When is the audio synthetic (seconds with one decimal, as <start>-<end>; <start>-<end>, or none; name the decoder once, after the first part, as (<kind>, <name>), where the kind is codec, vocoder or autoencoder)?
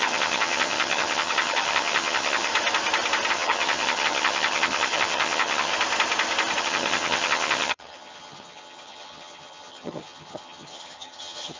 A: 0.0-2.5 (vocoder, HiFi-GAN); 3.3-5.7; 6.6-11.6